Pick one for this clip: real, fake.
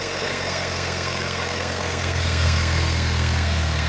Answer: fake